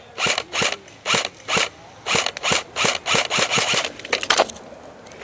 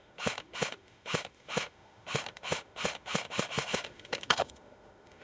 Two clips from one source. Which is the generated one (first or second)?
second